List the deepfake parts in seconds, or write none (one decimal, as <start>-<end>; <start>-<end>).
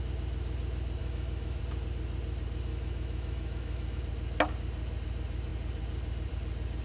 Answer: 1.0-1.6; 2.7-4.0